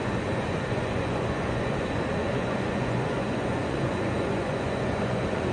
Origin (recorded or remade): remade